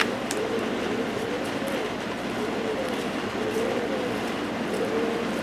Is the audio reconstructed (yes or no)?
yes